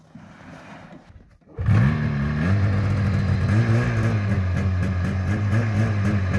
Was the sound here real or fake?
real